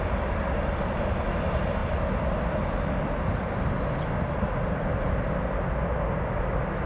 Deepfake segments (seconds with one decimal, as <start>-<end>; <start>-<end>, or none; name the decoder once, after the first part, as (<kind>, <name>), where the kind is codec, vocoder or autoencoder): none